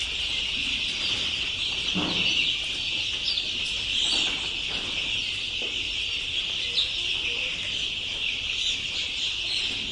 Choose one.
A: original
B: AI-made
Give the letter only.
A